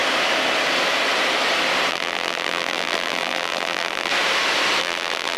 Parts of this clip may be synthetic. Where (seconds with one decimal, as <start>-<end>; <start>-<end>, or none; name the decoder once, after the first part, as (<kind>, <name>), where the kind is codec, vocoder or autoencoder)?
1.9-4.1 (vocoder, BigVGAN v2); 4.8-5.4